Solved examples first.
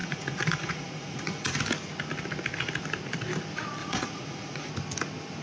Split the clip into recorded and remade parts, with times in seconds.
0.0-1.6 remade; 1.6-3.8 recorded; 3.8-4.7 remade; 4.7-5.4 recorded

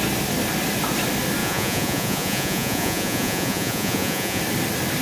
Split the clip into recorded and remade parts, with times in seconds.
0.0-1.4 recorded; 1.4-4.4 remade; 4.4-5.0 recorded

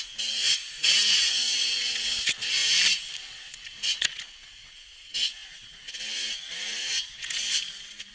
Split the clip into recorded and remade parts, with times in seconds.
0.0-2.6 remade; 2.6-3.2 recorded; 3.2-8.1 remade